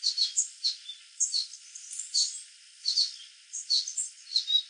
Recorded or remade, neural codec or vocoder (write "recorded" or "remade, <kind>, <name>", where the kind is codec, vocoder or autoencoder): recorded